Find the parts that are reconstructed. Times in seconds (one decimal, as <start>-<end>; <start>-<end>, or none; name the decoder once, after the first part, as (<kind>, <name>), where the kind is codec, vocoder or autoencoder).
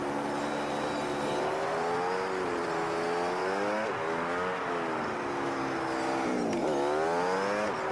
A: 3.4-5.6 (codec, DAC)